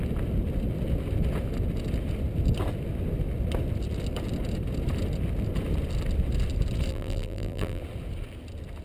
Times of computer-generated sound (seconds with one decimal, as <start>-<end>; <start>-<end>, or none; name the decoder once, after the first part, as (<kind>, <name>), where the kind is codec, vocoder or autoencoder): 6.9-7.8 (vocoder, BigVGAN v2)